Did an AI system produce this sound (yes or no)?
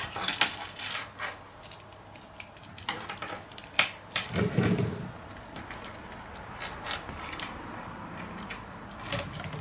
no